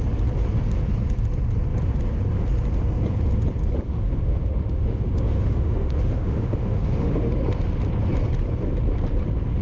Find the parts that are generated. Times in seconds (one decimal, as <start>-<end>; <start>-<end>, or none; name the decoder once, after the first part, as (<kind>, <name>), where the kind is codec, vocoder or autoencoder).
3.9-7.3 (autoencoder, DAC-VAE)

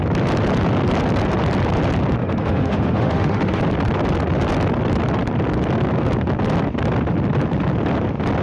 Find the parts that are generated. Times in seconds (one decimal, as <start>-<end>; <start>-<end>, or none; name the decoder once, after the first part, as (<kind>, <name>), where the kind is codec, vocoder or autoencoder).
2.2-3.6 (autoencoder, DAC-VAE)

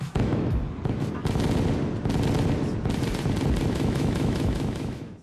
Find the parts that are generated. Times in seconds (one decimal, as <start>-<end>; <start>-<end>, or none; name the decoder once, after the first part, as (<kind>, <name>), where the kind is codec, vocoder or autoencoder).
0.0-0.6 (autoencoder, DAC-VAE); 3.7-5.2

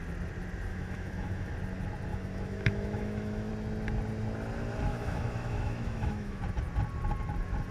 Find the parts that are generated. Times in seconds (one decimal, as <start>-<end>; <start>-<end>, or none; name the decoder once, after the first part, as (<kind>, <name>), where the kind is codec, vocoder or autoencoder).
0.7-1.5 (autoencoder, DAC-VAE); 2.1-3.5; 4.9-6.4

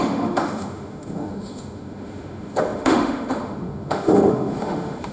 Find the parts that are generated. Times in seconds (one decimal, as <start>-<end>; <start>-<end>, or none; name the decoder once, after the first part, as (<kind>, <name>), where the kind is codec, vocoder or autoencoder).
0.0-5.1 (autoencoder, DAC-VAE)

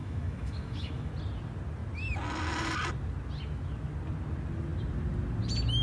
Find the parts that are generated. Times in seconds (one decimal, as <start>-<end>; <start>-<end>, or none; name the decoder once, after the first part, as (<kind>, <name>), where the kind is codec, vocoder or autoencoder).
0.0-1.1 (autoencoder, DAC-VAE)